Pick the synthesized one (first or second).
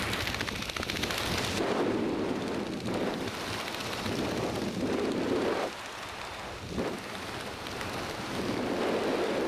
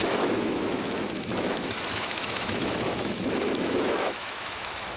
second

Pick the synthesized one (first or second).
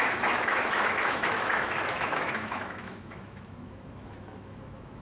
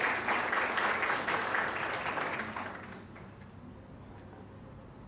first